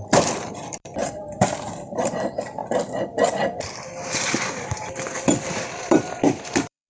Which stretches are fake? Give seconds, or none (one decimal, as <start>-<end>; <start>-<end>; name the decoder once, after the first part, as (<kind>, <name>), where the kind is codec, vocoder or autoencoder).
0.0-6.9 (vocoder, BigVGAN v2)